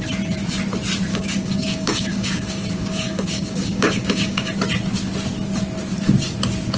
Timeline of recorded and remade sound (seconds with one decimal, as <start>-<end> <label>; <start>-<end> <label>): 0.0-1.1 recorded; 1.1-4.5 remade; 4.5-6.8 recorded